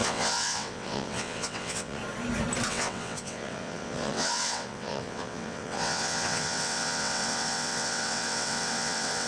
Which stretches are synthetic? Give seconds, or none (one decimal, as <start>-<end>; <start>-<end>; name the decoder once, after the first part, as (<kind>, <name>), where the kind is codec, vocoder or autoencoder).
0.0-2.0 (vocoder, WaveNeXt); 2.7-9.3